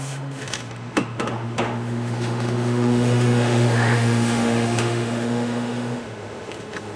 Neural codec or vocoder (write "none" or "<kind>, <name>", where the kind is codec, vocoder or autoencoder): autoencoder, DAC-VAE